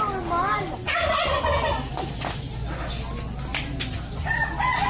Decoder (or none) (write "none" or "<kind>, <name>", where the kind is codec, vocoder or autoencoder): none